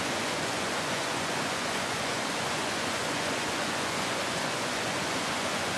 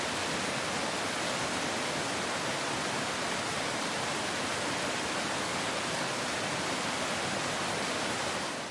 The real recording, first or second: second